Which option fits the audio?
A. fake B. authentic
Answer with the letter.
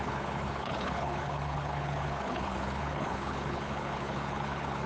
A